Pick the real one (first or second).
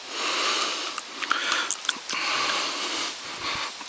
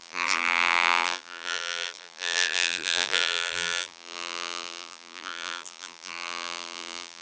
first